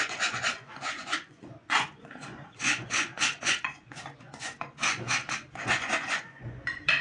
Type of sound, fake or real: fake